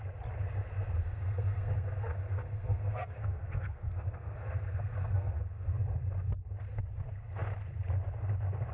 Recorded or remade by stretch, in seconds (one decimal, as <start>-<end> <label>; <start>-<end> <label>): 0.0-1.0 recorded; 1.0-5.7 remade; 5.7-8.7 recorded